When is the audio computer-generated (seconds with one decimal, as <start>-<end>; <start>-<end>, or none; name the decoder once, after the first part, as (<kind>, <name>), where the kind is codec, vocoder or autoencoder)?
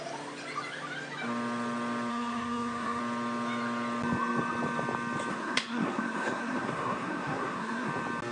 2.1-3.0 (codec, SNAC); 5.3-7.9